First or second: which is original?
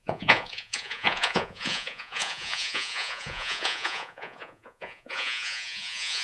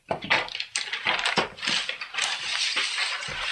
second